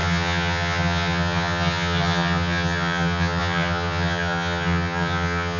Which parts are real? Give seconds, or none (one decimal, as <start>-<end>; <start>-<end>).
none